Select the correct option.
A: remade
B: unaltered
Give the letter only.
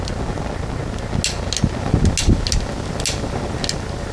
B